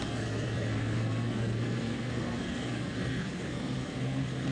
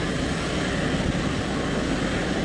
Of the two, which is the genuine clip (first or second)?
second